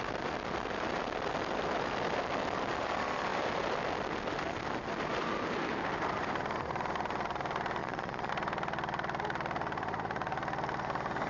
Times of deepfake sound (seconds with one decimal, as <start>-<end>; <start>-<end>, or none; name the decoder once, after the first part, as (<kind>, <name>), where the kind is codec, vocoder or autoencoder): 7.8-8.3 (vocoder, Vocos)